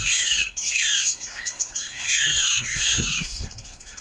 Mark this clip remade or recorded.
remade